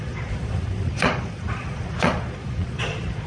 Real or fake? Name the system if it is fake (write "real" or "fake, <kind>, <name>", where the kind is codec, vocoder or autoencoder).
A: fake, vocoder, Vocos